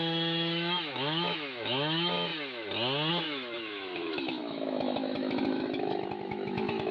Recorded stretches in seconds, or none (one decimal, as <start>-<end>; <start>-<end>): 2.3-3.1